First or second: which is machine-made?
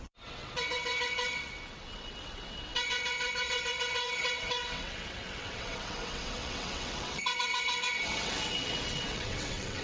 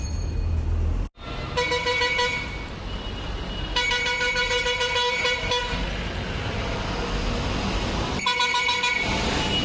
first